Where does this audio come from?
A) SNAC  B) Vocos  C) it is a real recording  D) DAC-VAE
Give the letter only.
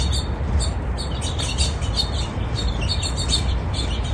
C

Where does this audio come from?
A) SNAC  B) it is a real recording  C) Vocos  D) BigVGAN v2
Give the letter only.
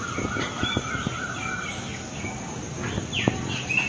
B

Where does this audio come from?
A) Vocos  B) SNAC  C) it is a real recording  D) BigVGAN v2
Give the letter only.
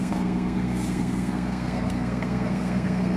B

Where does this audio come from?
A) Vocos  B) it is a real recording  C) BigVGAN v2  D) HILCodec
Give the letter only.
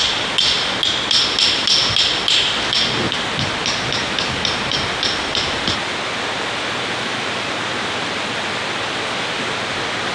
B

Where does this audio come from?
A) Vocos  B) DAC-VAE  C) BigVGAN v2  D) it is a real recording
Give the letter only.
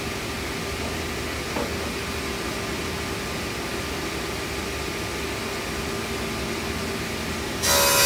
D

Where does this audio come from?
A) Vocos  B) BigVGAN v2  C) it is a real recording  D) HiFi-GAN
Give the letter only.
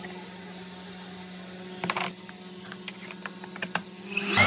C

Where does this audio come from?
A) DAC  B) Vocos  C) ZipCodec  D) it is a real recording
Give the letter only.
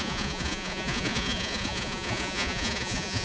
B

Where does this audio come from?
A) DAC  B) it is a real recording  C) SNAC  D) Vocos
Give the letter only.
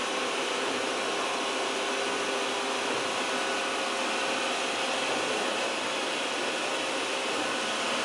B